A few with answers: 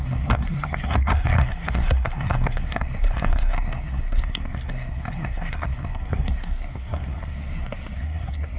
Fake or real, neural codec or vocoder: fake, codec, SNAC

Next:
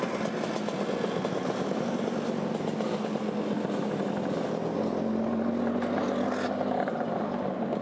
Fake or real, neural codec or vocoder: real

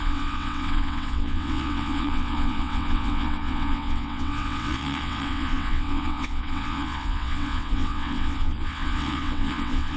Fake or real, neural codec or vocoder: fake, vocoder, WaveNeXt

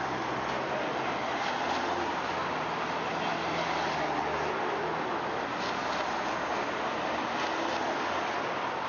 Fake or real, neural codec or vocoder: real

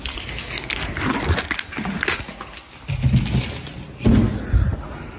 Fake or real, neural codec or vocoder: real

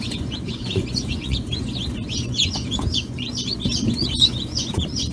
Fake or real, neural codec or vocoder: fake, vocoder, Vocos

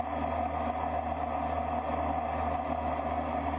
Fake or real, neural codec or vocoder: real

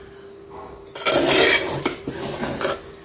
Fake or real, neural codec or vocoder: real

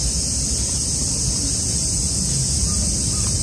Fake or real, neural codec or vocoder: real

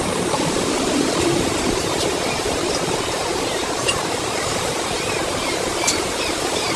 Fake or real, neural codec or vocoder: fake, vocoder, BigVGAN v2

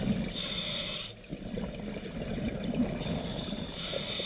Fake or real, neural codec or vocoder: real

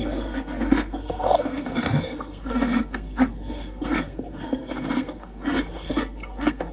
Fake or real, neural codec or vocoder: fake, codec, SNAC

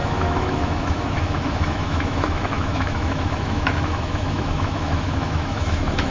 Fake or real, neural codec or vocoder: fake, autoencoder, DAC-VAE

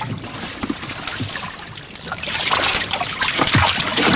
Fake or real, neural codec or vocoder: real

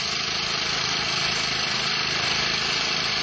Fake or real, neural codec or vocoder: real